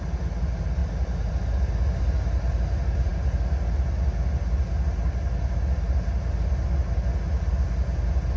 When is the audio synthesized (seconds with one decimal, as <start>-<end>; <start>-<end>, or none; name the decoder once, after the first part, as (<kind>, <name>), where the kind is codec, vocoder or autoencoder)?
none